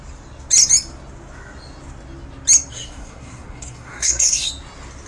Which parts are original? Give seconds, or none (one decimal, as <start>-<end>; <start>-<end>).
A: 0.0-2.7; 4.5-5.1